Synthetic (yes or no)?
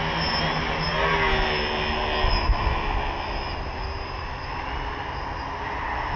no